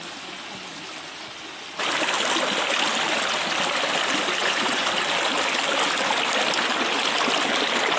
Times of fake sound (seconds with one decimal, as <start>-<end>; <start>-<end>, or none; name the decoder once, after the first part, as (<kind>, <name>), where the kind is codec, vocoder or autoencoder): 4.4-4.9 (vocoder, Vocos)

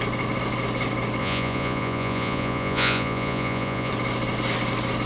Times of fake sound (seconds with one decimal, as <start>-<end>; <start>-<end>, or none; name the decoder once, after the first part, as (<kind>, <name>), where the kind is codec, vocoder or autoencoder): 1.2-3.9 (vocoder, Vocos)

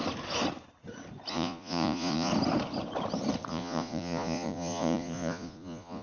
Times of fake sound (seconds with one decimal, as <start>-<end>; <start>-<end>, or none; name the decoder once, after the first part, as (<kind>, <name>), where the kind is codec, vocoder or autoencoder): 1.3-2.3 (vocoder, Vocos); 3.5-6.0

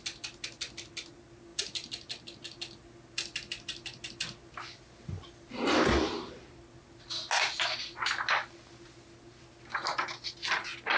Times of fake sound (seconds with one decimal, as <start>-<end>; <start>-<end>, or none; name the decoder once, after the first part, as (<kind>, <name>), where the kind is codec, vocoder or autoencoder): none

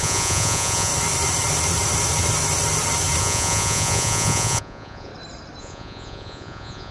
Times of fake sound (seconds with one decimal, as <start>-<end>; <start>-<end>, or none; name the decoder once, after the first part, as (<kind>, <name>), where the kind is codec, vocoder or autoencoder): 0.0-0.9 (vocoder, Vocos); 3.2-5.1; 5.6-6.9

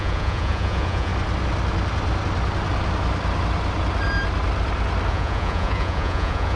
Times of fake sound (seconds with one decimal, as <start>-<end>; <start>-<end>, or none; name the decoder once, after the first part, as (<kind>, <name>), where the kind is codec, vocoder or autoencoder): 0.0-1.1 (vocoder, Vocos); 5.1-6.6

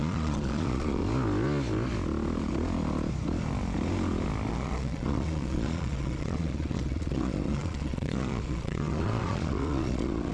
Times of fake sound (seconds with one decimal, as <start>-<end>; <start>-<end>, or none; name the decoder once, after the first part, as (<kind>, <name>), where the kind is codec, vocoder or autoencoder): 0.0-1.0 (vocoder, Vocos); 4.5-10.3